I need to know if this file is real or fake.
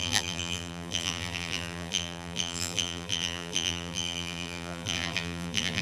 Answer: fake